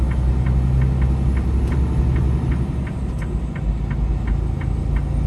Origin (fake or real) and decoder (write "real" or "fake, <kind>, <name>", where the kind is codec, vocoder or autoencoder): real